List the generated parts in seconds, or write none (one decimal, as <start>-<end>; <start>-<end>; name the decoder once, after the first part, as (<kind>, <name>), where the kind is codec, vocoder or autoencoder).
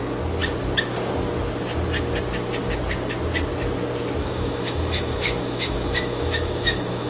4.2-7.1 (autoencoder, DAC-VAE)